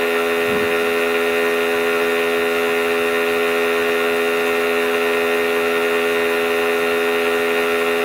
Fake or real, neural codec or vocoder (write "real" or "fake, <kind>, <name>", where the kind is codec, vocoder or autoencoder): real